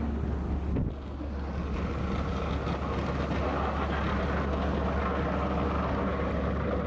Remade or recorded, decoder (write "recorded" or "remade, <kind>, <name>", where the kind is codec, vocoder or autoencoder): recorded